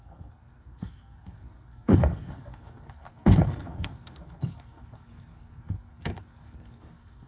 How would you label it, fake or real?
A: fake